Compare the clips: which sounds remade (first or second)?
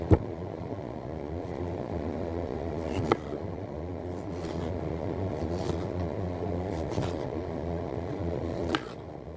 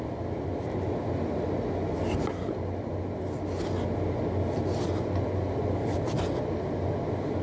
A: first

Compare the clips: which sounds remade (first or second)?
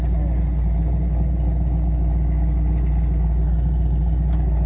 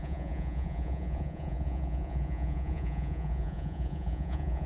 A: second